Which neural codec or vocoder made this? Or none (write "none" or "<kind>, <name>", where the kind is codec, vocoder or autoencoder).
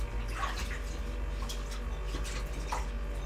none